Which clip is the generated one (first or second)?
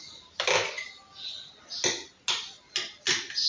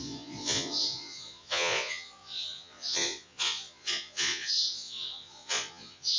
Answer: second